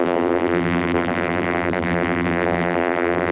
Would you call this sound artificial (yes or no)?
yes